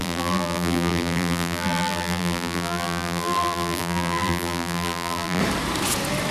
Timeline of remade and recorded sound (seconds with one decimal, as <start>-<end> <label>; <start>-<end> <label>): 0.0-5.4 remade; 5.4-6.3 recorded